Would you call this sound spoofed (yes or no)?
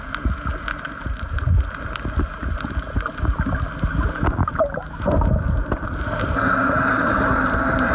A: no